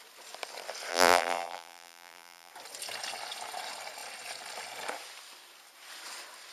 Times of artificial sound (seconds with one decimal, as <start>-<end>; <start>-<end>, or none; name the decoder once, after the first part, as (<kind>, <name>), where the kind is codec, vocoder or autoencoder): 0.9-2.5 (vocoder, BigVGAN v2)